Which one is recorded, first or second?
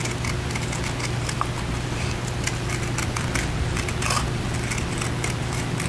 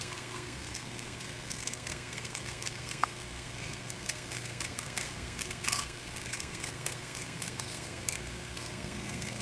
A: first